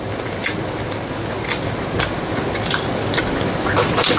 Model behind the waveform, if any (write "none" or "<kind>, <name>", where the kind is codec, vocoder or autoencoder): none